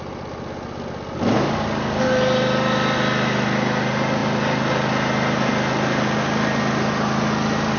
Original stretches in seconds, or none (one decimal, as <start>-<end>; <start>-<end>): 0.0-7.8